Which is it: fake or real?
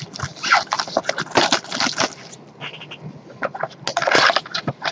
real